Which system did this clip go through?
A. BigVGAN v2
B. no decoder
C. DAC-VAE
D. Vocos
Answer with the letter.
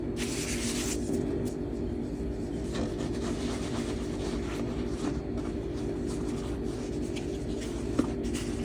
B